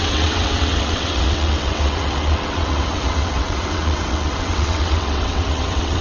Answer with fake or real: fake